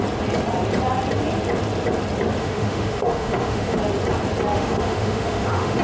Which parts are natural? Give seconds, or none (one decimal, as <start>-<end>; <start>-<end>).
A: 0.0-2.4; 3.8-4.5